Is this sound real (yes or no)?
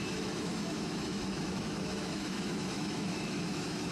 no